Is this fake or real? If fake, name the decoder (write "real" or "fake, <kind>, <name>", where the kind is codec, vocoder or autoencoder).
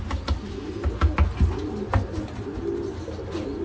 real